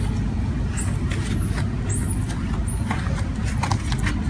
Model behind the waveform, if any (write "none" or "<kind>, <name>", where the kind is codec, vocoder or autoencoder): none